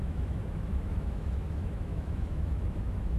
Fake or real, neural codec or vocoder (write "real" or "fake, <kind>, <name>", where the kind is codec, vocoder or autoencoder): fake, autoencoder, DAC-VAE